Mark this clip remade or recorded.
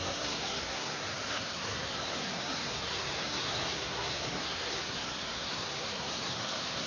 remade